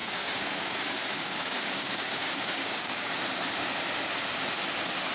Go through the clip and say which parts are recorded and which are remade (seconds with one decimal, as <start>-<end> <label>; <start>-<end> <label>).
0.0-3.1 remade; 3.1-5.1 recorded

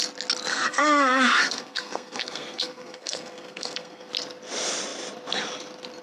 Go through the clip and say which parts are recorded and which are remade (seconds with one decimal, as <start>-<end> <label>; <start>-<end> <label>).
0.0-0.5 recorded; 0.5-4.1 remade; 4.1-6.0 recorded